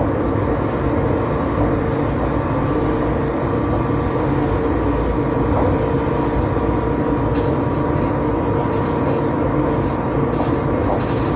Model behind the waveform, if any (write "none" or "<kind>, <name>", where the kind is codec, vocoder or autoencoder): none